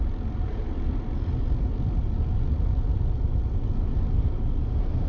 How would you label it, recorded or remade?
recorded